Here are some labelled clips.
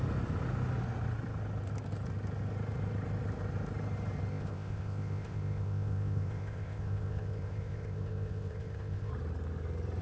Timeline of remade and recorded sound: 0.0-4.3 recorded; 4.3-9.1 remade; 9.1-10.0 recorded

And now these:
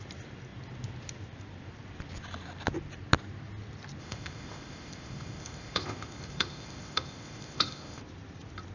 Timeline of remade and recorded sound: 0.0-4.0 recorded; 4.0-8.0 remade; 8.0-8.7 recorded

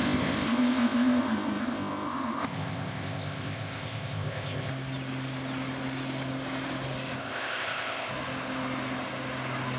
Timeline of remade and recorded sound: 0.0-4.7 remade; 4.7-7.2 recorded; 7.2-8.1 remade; 8.1-9.8 recorded

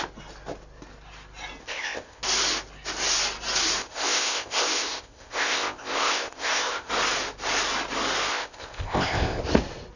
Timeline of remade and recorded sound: 0.0-1.6 recorded; 1.6-2.2 remade; 2.2-3.8 recorded; 3.8-6.9 remade; 6.9-8.3 recorded; 8.3-9.4 remade; 9.4-10.0 recorded

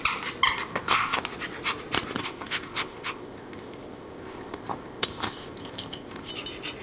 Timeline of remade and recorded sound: 0.0-0.7 recorded; 0.7-1.2 remade; 1.2-2.2 recorded; 2.2-6.3 remade; 6.3-6.8 recorded

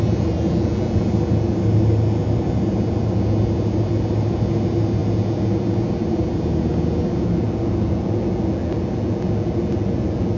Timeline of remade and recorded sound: 0.0-10.4 recorded

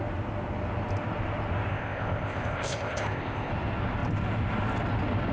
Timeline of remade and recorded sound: 0.0-1.7 recorded; 1.7-3.5 remade; 3.5-5.3 recorded

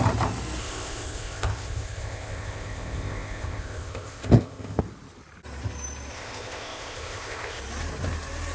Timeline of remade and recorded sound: 0.0-0.6 recorded; 0.6-4.8 remade; 4.8-6.1 recorded; 6.1-7.6 remade; 7.6-8.5 recorded